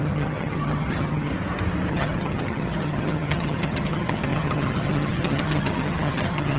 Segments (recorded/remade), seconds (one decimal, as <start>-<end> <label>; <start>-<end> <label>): 0.0-1.3 remade; 1.3-1.9 recorded; 1.9-6.6 remade